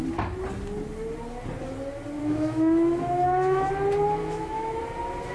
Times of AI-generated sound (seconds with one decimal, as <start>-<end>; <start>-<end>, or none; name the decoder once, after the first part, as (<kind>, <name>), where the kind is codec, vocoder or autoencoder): 2.2-3.7 (autoencoder, DAC-VAE); 4.2-4.8